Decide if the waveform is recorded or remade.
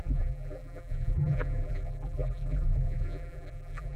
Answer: remade